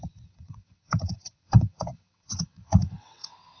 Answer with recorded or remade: remade